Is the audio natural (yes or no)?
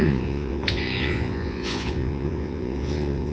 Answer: no